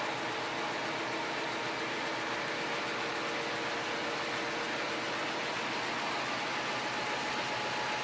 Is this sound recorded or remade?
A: recorded